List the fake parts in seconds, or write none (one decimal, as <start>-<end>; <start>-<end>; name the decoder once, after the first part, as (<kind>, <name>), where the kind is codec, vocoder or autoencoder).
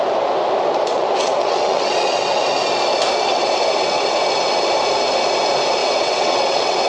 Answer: 0.9-2.4 (vocoder, WaveNeXt); 3.3-4.2; 5.8-6.9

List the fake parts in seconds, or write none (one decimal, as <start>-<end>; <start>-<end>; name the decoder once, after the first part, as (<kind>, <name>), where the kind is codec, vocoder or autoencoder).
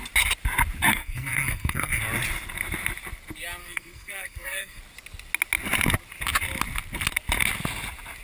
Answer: 0.9-2.0 (codec, SNAC); 3.6-4.8